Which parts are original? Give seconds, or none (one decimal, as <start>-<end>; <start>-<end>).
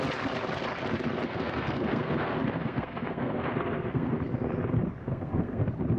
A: 0.0-1.2; 4.2-5.0; 5.6-6.0